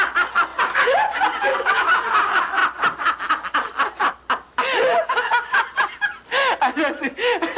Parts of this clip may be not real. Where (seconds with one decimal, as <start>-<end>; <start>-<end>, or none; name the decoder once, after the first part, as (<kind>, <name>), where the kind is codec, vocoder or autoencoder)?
none